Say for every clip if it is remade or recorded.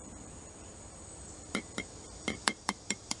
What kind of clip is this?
remade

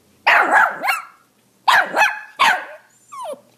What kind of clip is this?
recorded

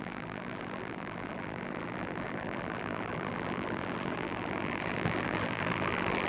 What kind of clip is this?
remade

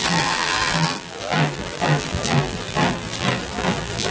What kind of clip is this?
remade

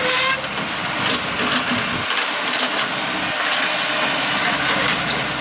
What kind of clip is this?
recorded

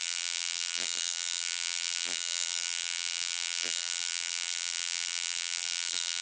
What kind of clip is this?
remade